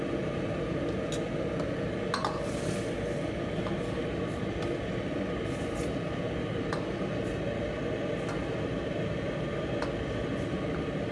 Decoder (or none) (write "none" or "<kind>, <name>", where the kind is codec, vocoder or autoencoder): none